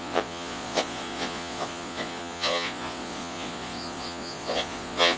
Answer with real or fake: fake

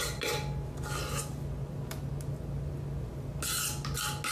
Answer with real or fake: real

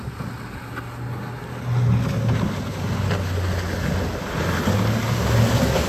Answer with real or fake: real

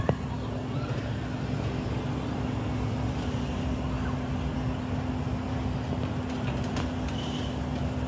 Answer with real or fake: real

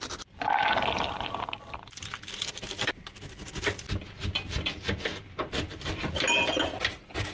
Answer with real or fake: real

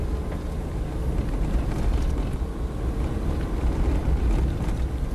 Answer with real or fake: real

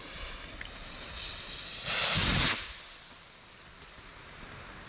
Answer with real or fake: real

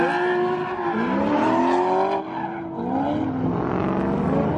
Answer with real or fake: real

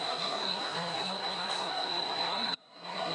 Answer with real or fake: fake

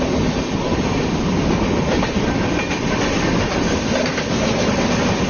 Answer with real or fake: real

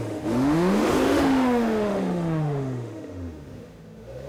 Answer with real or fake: fake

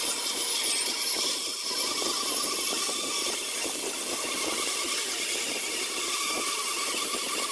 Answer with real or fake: fake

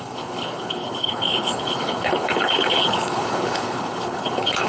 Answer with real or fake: fake